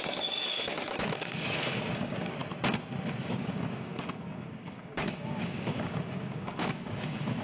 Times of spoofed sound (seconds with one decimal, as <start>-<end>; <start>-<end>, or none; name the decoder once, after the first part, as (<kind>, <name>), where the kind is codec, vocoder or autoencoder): 0.0-2.4 (codec, DAC); 3.2-7.4